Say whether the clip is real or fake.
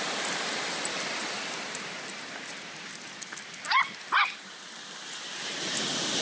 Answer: real